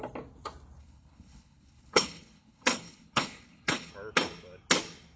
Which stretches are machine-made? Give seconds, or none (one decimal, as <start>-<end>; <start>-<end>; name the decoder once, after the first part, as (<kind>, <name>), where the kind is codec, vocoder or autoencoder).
0.8-3.9 (codec, HILCodec)